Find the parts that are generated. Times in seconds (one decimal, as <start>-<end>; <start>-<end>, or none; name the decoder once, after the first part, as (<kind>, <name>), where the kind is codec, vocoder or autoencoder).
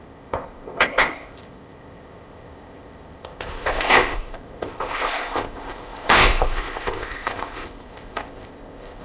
0.0-9.0 (codec, ZipCodec)